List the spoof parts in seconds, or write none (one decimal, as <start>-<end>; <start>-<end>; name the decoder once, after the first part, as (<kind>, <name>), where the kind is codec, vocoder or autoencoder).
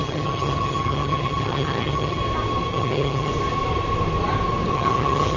0.0-2.2 (vocoder, HiFi-GAN); 2.7-3.3; 4.7-5.4